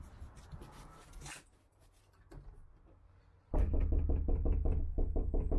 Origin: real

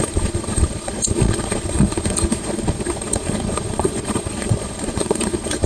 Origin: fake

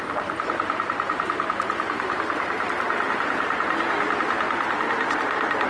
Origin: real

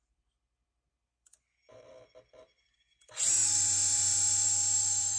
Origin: fake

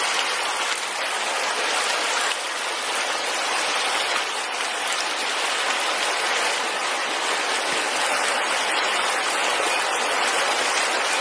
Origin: real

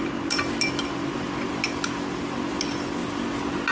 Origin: real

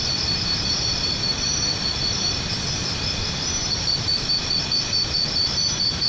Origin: fake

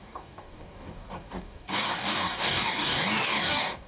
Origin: fake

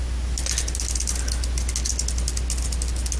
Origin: real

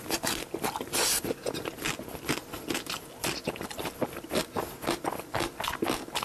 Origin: real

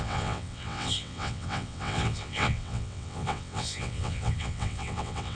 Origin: fake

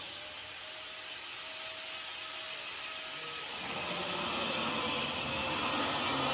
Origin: real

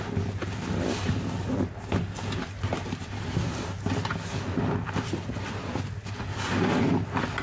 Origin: real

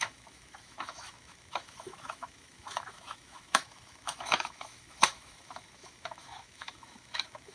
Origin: fake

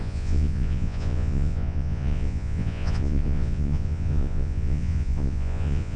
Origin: fake